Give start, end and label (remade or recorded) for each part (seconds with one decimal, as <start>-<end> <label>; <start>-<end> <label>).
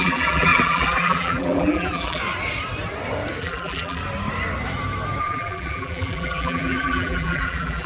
0.0-2.2 remade; 2.2-3.4 recorded; 3.4-4.0 remade; 4.0-5.2 recorded; 5.2-7.9 remade